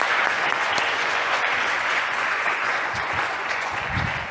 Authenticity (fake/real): fake